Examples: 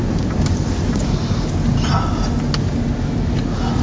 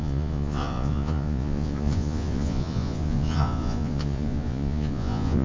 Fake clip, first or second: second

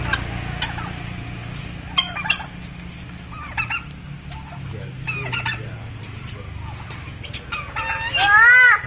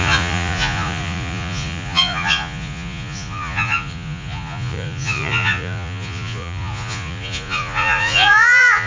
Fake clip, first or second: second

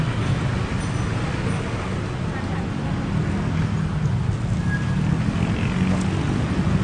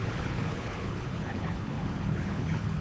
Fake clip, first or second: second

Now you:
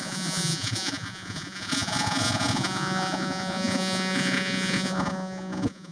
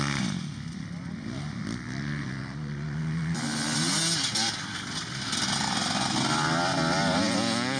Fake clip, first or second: first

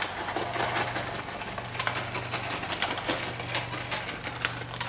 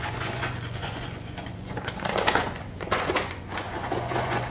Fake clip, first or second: second